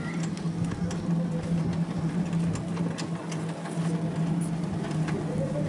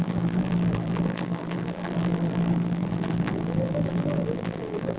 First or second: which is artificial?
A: second